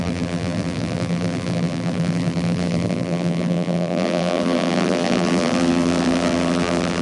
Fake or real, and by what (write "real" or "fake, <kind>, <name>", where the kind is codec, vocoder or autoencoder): fake, vocoder, BigVGAN v2